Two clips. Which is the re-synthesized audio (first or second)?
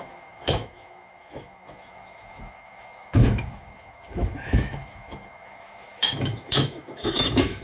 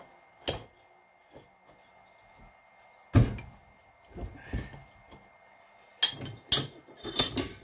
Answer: first